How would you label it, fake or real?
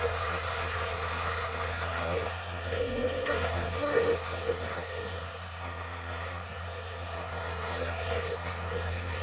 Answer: fake